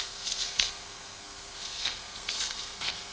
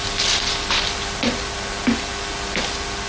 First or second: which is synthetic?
first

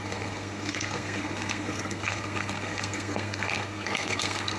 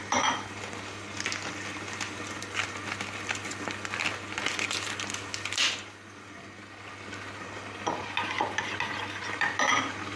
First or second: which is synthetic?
first